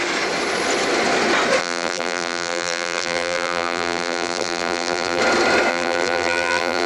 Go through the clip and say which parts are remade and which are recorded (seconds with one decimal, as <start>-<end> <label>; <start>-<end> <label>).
0.0-1.6 recorded; 1.6-5.2 remade; 5.2-5.7 recorded; 5.7-6.9 remade